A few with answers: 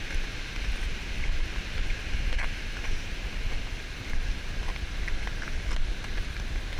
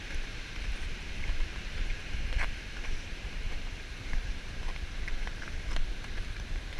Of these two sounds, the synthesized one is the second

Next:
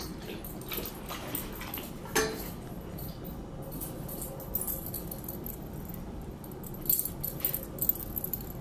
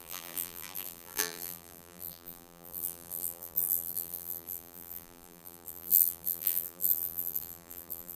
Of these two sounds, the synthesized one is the second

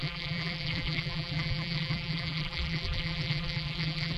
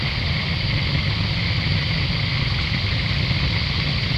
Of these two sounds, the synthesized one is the first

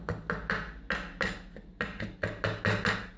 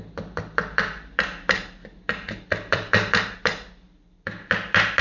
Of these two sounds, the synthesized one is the second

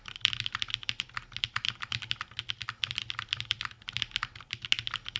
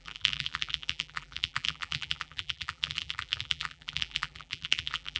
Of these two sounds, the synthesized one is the second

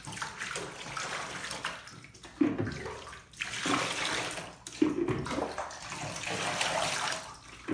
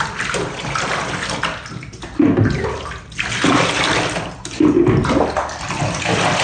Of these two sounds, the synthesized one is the second